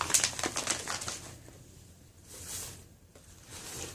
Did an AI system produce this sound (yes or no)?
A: no